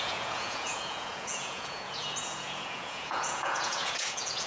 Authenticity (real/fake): fake